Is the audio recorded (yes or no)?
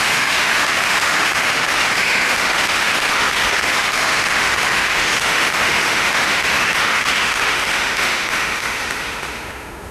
no